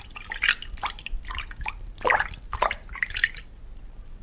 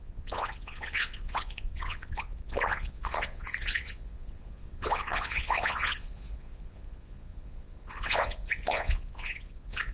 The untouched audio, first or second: first